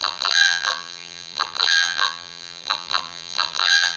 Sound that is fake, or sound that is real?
fake